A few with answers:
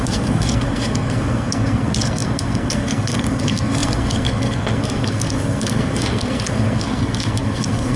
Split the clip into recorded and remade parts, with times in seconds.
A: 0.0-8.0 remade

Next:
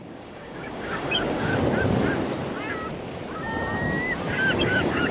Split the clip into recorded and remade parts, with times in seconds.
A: 0.0-1.5 remade; 1.5-4.6 recorded; 4.6-5.1 remade

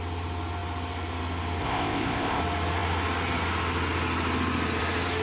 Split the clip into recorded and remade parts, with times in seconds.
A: 0.0-1.6 recorded; 1.6-2.4 remade; 2.4-5.2 recorded

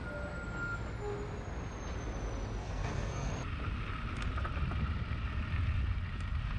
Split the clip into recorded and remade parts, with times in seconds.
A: 0.0-2.6 recorded; 2.6-3.3 remade; 3.3-6.6 recorded

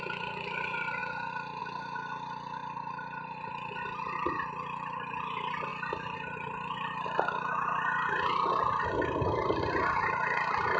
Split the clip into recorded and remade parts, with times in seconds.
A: 0.0-10.8 recorded